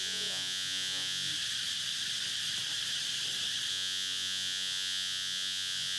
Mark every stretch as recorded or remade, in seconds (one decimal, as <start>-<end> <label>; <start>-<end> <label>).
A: 0.0-1.3 remade; 1.3-3.7 recorded; 3.7-6.0 remade